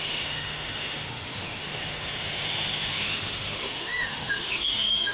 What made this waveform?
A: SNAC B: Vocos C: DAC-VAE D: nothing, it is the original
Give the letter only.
C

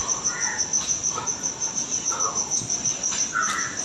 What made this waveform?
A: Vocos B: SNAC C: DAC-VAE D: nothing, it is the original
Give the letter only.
D